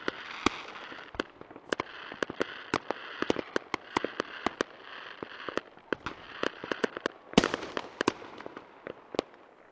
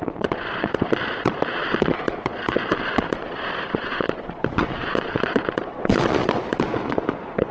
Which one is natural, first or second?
first